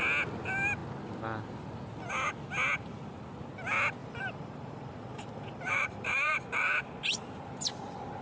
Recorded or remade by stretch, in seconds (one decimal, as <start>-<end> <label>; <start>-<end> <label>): 0.0-4.0 recorded; 4.0-6.4 remade; 6.4-8.2 recorded